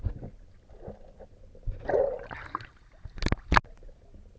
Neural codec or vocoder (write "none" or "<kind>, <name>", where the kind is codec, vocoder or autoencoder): none